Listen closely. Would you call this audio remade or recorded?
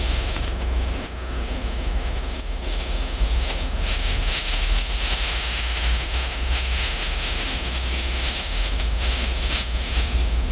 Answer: remade